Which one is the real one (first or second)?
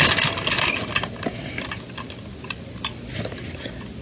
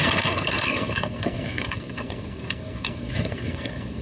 first